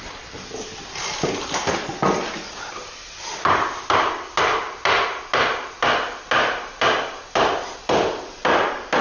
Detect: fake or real real